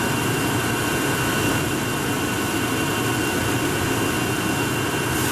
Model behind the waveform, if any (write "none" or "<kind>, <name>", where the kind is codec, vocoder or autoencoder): none